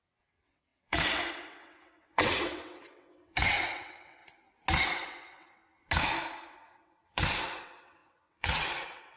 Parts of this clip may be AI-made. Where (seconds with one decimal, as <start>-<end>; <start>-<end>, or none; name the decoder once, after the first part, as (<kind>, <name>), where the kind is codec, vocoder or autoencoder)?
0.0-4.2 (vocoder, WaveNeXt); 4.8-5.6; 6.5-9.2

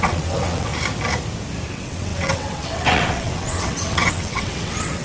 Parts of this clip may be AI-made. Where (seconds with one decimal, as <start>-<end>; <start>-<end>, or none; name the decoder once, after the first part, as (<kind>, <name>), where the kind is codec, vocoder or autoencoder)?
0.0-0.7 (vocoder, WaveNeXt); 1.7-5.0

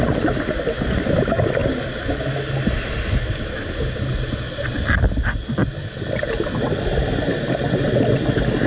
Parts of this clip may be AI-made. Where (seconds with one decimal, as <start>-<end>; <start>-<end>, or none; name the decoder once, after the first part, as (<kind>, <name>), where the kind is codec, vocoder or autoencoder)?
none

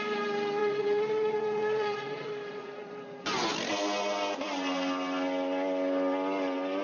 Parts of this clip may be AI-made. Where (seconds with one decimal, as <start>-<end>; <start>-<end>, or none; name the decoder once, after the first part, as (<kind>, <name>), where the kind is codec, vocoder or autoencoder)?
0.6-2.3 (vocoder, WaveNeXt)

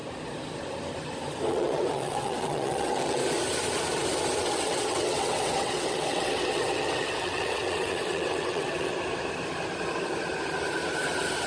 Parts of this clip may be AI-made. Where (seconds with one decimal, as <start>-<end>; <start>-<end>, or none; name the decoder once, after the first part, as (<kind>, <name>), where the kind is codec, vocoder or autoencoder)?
1.5-3.2 (vocoder, WaveNeXt); 4.4-8.9

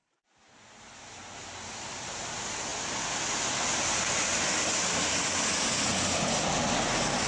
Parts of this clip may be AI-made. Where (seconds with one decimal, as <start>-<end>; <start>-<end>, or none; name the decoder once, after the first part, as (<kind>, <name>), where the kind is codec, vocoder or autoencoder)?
none

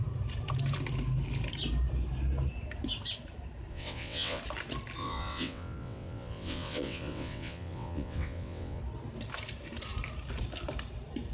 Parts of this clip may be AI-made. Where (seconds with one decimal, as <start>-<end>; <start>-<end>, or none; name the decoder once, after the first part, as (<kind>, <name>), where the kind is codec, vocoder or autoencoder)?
3.7-4.4 (vocoder, WaveNeXt); 5.0-8.8